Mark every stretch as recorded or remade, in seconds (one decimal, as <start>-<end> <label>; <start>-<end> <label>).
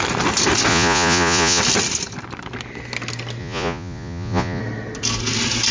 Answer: 0.0-0.7 recorded; 0.7-1.6 remade; 1.6-3.4 recorded; 3.4-4.6 remade; 4.6-5.7 recorded